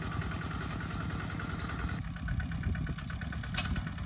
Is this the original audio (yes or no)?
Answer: yes